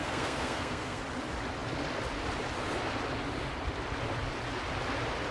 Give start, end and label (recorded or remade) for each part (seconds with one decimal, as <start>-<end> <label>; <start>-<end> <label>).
0.0-1.0 remade; 1.0-5.3 recorded